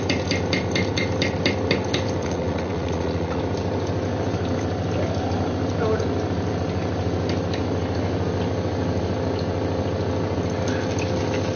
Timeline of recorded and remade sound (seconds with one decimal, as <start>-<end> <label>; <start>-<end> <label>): 0.0-2.2 recorded; 2.2-3.4 remade; 3.4-11.6 recorded